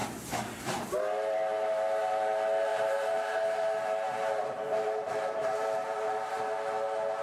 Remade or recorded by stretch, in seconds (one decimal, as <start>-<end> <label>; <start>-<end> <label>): 0.0-2.7 recorded; 2.7-6.4 remade; 6.4-7.2 recorded

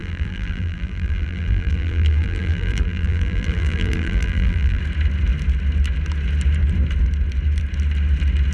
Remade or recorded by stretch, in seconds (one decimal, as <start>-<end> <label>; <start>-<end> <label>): 0.0-4.8 remade; 4.8-8.5 recorded

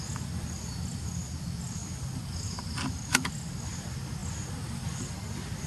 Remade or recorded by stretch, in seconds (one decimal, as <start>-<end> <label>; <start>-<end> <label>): 0.0-5.7 recorded

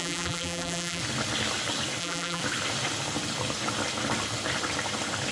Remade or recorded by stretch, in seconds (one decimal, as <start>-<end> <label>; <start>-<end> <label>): 0.0-1.0 remade; 1.0-2.0 recorded; 2.0-2.4 remade; 2.4-5.3 recorded

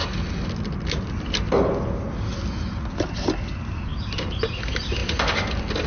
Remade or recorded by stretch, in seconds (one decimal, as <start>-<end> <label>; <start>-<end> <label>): 0.0-3.9 recorded; 3.9-4.6 remade; 4.6-5.9 recorded